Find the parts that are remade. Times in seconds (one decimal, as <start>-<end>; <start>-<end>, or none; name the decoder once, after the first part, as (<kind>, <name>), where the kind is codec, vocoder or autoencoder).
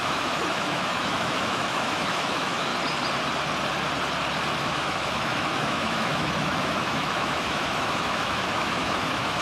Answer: 0.0-2.7 (autoencoder, DAC-VAE); 4.6-9.4